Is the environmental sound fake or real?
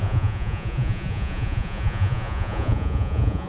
fake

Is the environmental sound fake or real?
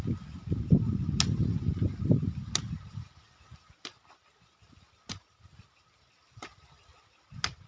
real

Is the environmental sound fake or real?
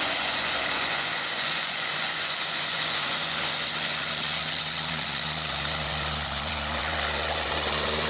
fake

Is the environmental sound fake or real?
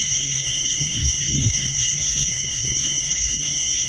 fake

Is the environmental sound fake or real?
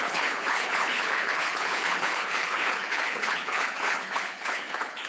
fake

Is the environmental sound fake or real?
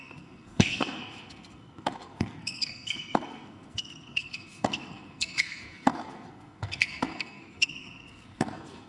fake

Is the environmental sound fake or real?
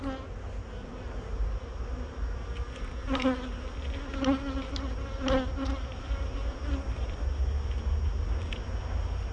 real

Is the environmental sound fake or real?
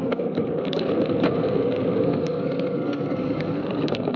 fake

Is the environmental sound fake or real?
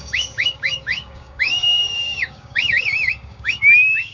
fake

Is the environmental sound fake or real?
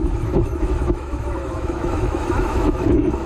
fake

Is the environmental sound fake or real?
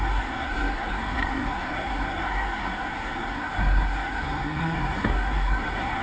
fake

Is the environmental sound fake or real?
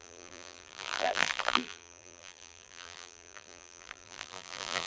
fake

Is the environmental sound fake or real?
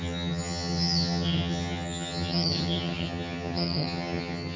fake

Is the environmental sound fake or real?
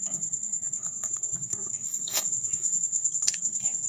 fake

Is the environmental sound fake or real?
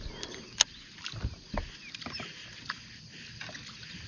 real